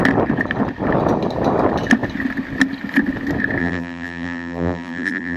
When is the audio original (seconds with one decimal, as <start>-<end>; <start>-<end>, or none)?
0.0-3.6